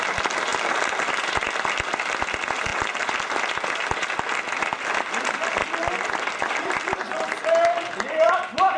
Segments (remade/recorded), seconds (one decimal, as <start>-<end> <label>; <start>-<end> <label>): 0.0-0.5 recorded; 0.5-1.1 remade; 1.1-5.6 recorded; 5.6-6.5 remade; 6.5-7.7 recorded; 7.7-8.3 remade; 8.3-8.8 recorded